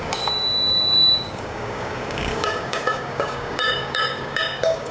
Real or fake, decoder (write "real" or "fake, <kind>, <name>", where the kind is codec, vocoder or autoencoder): fake, codec, DAC